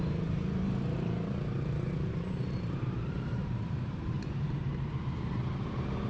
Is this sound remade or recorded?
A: remade